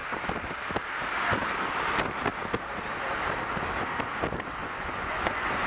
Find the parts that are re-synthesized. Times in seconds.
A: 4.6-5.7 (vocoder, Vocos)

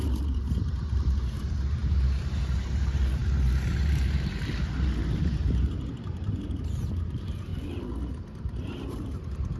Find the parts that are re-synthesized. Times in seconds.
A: 0.0-7.5 (vocoder, BigVGAN v2); 8.1-9.6

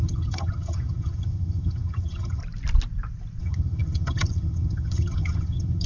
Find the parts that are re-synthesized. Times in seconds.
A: 0.0-2.4 (vocoder, HiFi-GAN); 3.4-5.9

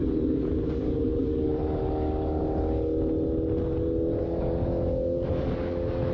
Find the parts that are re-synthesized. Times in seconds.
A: 0.0-2.4 (codec, DAC); 4.2-6.1